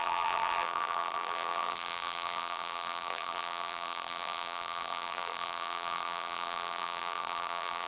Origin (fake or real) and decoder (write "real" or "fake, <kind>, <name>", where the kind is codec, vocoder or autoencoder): fake, vocoder, BigVGAN v2